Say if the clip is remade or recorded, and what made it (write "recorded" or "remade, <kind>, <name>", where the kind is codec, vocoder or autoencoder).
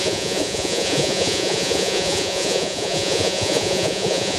remade, vocoder, Vocos